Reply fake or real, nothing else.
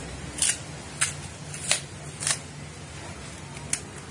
real